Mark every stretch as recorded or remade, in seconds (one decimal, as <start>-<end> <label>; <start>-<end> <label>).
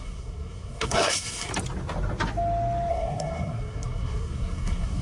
0.0-1.5 remade; 1.5-2.9 recorded; 2.9-5.0 remade